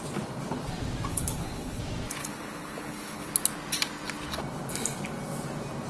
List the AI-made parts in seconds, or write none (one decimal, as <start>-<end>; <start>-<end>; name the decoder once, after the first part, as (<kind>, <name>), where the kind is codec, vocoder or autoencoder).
1.1-1.8 (codec, HILCodec); 2.2-3.3